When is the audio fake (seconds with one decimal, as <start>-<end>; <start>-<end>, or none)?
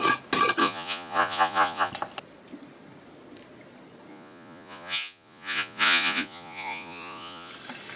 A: 0.6-1.9; 4.1-7.5